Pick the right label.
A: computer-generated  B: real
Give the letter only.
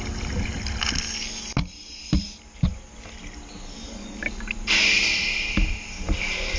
B